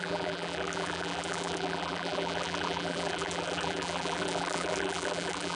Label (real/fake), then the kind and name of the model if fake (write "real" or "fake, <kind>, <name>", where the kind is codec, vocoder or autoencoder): fake, vocoder, BigVGAN v2